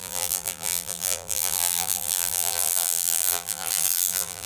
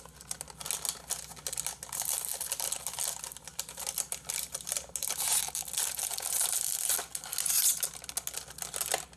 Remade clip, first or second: first